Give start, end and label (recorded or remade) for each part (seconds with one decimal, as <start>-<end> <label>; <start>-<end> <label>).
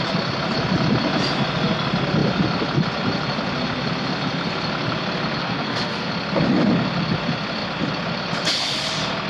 0.0-5.4 recorded; 5.4-6.1 remade; 6.1-9.3 recorded